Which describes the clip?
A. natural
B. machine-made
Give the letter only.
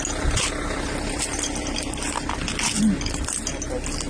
A